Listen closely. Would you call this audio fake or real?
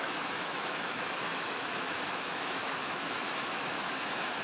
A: fake